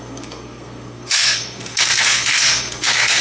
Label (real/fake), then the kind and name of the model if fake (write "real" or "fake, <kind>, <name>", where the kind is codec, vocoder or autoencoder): fake, codec, SNAC